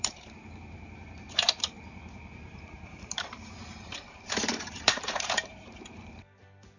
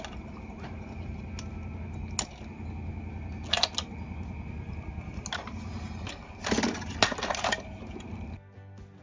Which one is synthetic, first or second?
first